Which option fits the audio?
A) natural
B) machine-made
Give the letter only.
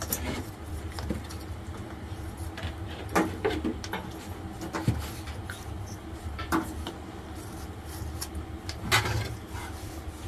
A